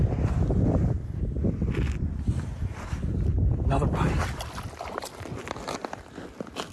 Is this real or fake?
real